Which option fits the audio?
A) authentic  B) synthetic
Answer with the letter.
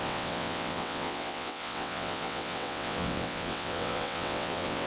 B